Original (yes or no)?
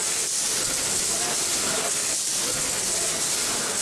yes